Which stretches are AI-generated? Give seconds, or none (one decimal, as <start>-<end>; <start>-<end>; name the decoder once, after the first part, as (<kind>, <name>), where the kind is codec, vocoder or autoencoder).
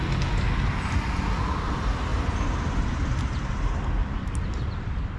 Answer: 2.1-3.2 (vocoder, BigVGAN v2); 4.0-5.2